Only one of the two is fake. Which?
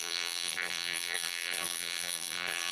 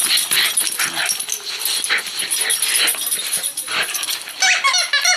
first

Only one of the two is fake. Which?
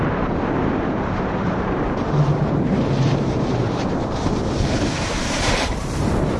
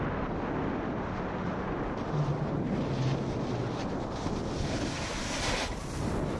first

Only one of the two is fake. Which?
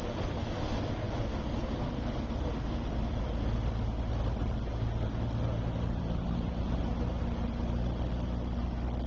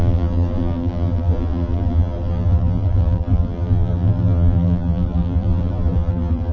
second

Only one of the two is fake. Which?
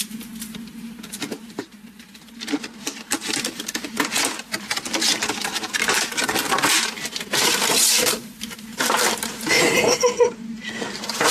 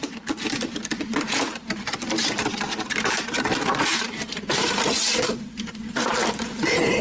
second